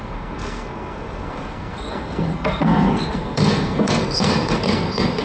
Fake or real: fake